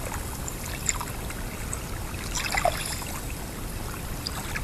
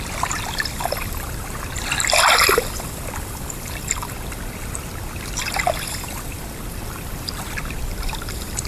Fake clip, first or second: second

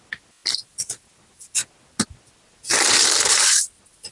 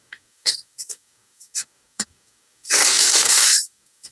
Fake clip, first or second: second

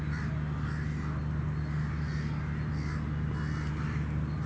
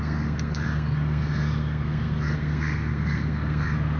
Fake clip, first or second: second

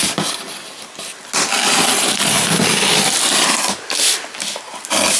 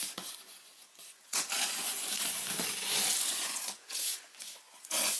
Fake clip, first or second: second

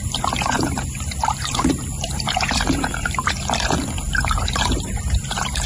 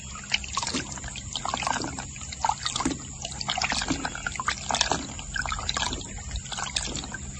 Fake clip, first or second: first